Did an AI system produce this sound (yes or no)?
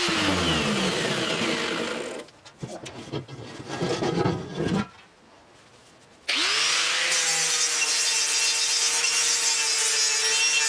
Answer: no